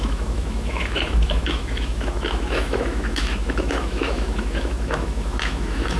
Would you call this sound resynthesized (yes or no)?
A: yes